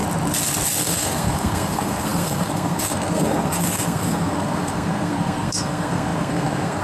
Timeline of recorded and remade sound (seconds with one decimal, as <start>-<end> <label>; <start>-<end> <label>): 0.0-0.8 recorded; 0.8-6.8 remade